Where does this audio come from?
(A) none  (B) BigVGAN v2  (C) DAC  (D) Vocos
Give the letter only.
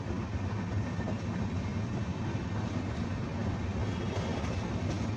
A